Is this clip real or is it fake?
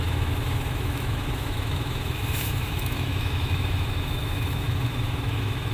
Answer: fake